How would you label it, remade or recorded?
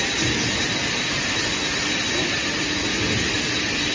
recorded